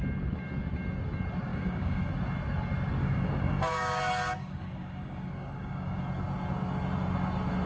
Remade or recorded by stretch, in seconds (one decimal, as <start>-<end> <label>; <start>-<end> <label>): 0.0-1.5 recorded; 1.5-2.1 remade; 2.1-3.0 recorded; 3.0-4.0 remade; 4.0-4.4 recorded; 4.4-6.0 remade; 6.0-7.7 recorded